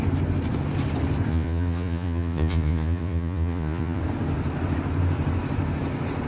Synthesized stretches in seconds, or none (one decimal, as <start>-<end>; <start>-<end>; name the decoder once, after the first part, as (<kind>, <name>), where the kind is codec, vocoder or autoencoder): 1.3-4.0 (vocoder, Vocos)